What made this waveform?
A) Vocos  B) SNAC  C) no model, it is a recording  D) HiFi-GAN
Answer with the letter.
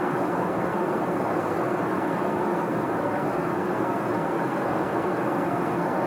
B